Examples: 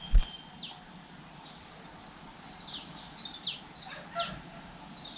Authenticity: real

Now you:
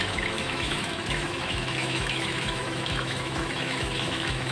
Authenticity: fake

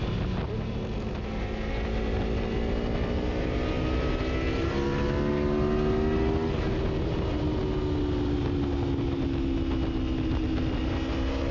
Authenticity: real